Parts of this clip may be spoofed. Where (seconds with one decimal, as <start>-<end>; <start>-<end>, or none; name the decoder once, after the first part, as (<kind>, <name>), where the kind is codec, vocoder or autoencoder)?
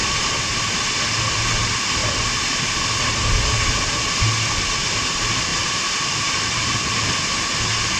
2.0-2.6 (vocoder, BigVGAN v2); 5.5-7.1